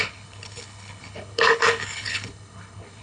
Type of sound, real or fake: fake